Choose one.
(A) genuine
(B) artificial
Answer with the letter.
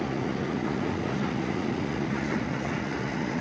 B